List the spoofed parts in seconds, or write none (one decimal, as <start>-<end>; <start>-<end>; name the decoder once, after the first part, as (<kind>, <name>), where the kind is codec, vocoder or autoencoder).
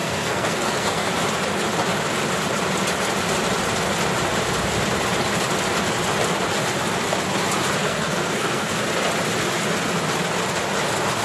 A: 0.0-1.1 (codec, SNAC); 7.8-8.8